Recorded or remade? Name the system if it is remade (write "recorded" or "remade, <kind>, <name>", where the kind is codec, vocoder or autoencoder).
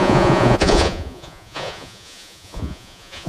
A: remade, vocoder, Vocos